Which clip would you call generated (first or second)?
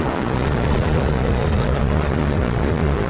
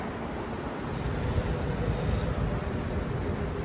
first